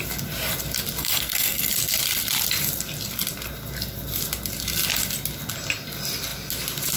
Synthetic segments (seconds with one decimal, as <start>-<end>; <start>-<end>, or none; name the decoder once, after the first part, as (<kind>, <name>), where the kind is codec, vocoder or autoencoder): 1.0-1.7 (codec, SNAC)